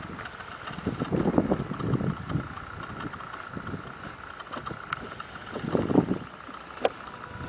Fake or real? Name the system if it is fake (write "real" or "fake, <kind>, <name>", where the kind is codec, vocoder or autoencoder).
real